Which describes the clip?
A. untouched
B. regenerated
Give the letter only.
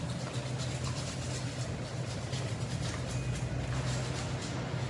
A